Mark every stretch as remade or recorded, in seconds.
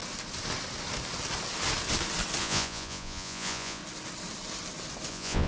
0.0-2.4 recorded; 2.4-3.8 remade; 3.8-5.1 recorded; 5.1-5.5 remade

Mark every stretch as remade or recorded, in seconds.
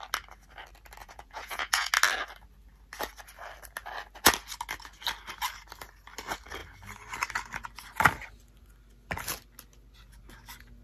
0.0-1.0 recorded; 1.0-1.9 remade; 1.9-10.8 recorded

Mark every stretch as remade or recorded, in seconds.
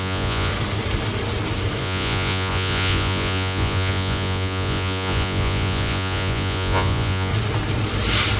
0.0-0.5 remade; 0.5-1.8 recorded; 1.8-7.3 remade; 7.3-8.4 recorded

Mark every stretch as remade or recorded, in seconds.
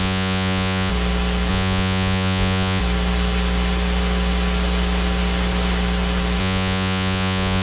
0.0-0.9 remade; 0.9-1.5 recorded; 1.5-2.8 remade; 2.8-6.4 recorded; 6.4-7.6 remade